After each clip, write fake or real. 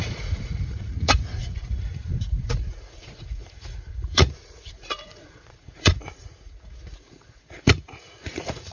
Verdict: fake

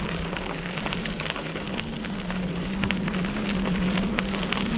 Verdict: real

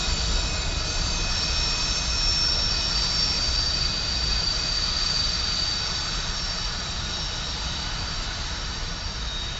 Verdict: real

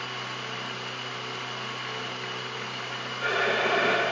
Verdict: real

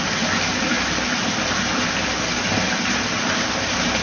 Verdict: real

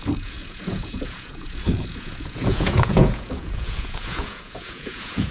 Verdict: fake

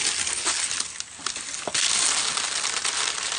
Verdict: real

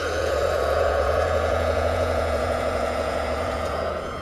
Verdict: fake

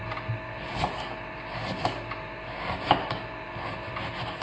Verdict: real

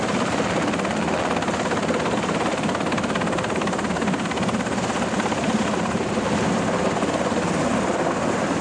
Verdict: real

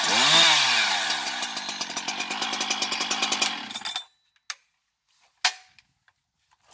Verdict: real